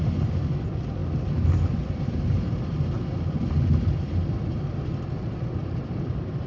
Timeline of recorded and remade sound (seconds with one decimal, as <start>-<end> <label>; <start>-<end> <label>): 0.0-5.6 recorded; 5.6-6.5 remade

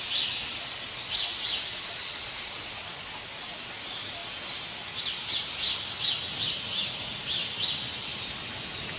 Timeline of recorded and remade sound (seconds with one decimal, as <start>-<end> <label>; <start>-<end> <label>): 0.0-1.9 recorded; 1.9-2.7 remade; 2.7-9.0 recorded

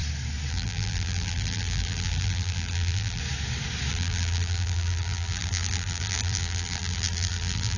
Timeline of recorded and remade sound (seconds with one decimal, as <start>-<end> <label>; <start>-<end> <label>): 0.0-0.5 recorded; 0.5-3.2 remade; 3.2-3.9 recorded; 3.9-7.8 remade

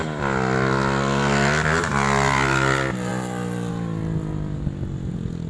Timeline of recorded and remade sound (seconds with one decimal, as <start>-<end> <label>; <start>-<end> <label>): 0.0-5.5 recorded

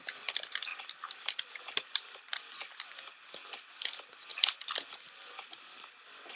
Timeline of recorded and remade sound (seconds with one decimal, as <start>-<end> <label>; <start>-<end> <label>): 0.0-2.3 remade; 2.3-3.6 recorded; 3.6-4.3 remade; 4.3-5.5 recorded; 5.5-6.4 remade